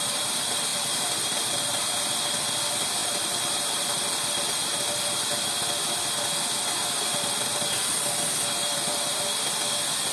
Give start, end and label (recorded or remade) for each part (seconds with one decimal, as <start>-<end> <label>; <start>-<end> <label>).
0.0-0.7 recorded; 0.7-2.0 remade; 2.0-3.0 recorded; 3.0-4.1 remade; 4.1-8.6 recorded; 8.6-9.2 remade; 9.2-10.1 recorded